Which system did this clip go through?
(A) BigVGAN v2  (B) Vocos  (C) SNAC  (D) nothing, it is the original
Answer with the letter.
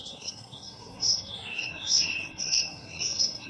C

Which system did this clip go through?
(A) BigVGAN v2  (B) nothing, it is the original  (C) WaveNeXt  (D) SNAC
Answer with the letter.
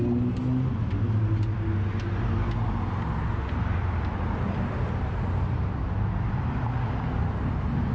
B